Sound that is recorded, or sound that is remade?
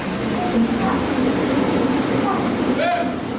recorded